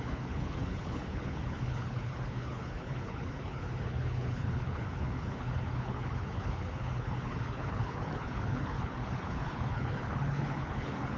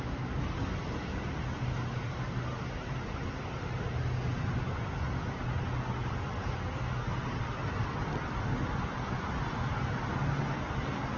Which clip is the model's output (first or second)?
first